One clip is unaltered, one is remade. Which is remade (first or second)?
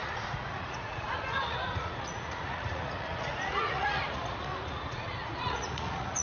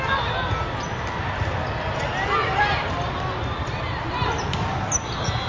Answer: first